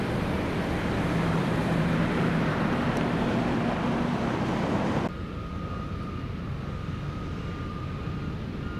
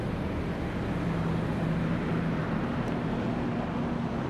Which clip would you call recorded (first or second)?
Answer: second